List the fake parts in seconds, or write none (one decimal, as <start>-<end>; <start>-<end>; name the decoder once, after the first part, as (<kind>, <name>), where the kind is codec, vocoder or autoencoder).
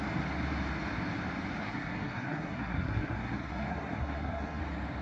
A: 1.6-4.6 (codec, SNAC)